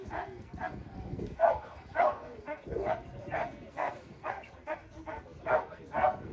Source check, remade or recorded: remade